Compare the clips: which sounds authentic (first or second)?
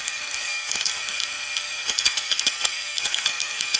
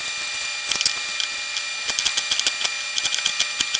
second